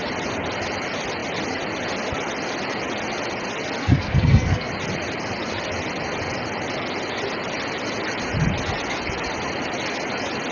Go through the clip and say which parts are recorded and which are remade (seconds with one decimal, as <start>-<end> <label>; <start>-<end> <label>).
0.0-3.8 recorded; 3.8-4.7 remade; 4.7-10.5 recorded